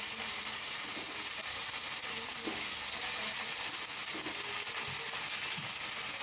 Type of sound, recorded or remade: recorded